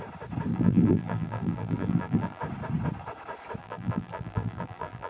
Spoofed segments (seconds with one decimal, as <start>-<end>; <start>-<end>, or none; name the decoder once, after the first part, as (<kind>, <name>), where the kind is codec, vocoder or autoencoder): 0.5-2.4 (vocoder, BigVGAN v2); 3.6-5.1